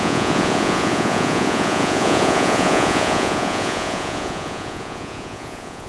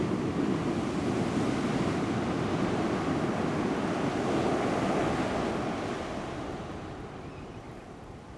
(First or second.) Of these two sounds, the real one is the second